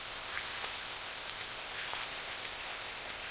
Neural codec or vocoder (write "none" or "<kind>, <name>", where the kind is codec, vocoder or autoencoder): codec, ZipCodec